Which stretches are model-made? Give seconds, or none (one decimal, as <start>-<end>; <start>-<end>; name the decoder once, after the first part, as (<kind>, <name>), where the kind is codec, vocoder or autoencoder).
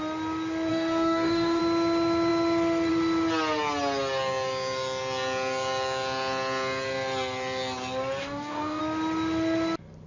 0.7-1.6 (codec, DAC); 8.2-8.8